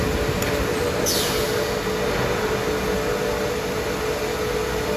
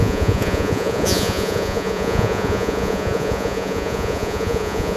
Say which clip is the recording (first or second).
first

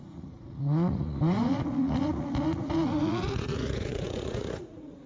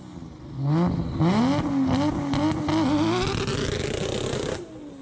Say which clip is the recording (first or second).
second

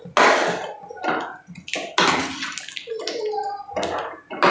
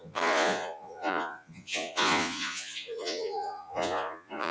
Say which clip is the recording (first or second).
first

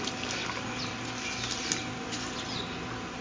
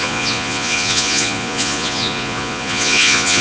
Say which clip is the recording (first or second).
first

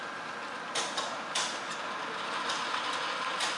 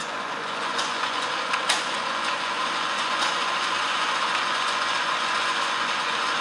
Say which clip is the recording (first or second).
first